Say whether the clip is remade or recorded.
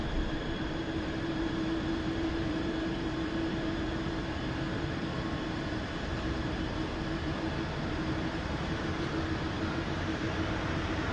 remade